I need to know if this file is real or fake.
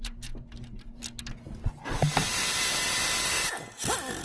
real